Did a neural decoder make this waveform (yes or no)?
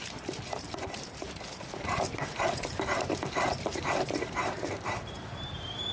yes